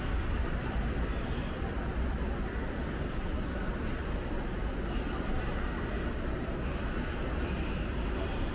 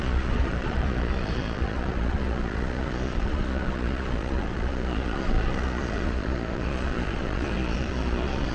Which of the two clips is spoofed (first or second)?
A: second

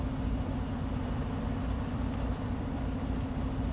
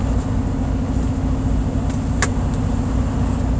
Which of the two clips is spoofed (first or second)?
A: first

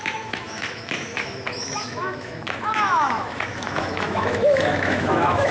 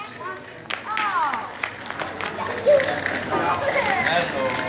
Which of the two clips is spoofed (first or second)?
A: first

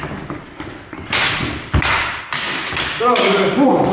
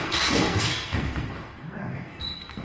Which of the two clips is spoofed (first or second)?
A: second